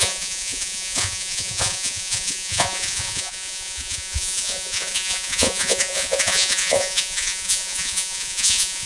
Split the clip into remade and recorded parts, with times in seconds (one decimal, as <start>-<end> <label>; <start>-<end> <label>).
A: 0.0-8.9 remade